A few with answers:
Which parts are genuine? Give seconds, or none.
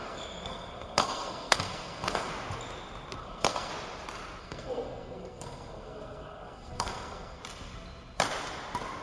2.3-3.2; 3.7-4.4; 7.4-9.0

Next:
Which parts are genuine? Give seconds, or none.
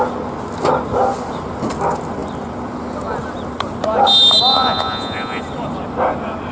0.0-4.5; 5.4-6.5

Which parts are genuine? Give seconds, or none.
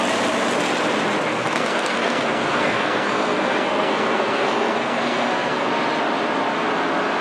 0.0-1.4; 5.7-7.2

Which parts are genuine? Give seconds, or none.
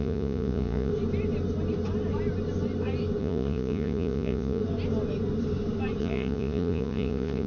0.9-3.2; 4.6-6.0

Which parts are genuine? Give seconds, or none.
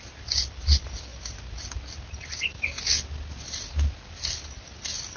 0.0-5.2